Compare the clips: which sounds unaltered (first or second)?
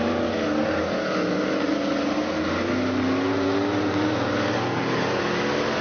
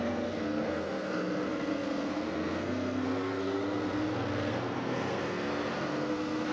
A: first